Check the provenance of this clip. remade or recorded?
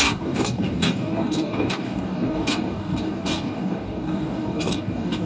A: remade